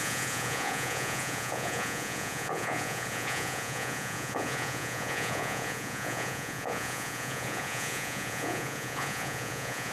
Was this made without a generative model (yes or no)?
no